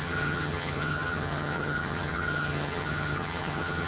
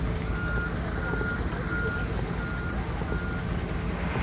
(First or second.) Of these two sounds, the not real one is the first